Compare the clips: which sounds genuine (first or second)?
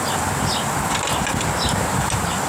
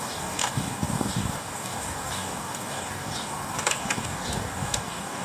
first